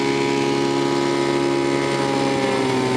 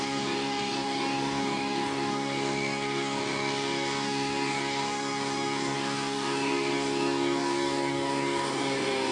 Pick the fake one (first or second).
second